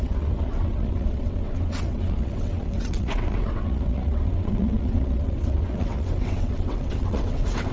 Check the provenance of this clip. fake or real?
fake